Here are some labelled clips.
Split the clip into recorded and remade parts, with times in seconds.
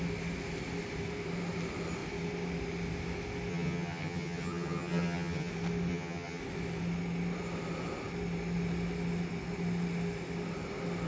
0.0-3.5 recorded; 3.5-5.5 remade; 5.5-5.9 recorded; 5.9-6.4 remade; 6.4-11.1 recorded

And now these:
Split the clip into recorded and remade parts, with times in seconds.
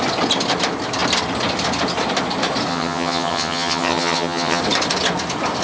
0.0-2.7 recorded; 2.7-4.6 remade; 4.6-5.6 recorded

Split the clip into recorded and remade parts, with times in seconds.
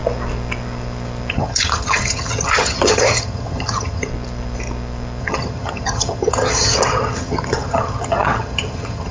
0.0-1.3 recorded; 1.3-4.1 remade; 4.1-5.2 recorded; 5.2-9.1 remade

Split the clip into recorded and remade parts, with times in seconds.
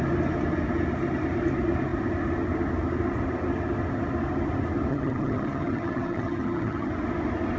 0.0-4.9 recorded; 4.9-6.9 remade; 6.9-7.6 recorded